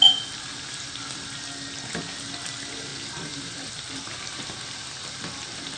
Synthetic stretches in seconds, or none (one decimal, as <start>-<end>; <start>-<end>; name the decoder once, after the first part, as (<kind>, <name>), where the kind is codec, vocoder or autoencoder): none